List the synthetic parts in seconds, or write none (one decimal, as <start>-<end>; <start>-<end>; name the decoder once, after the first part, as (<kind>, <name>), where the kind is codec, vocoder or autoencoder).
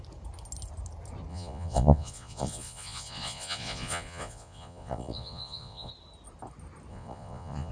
1.3-5.9 (vocoder, Vocos); 6.9-7.7